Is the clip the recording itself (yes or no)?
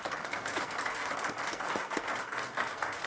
no